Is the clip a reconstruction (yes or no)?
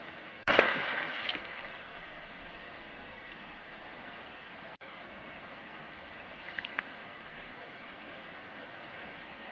yes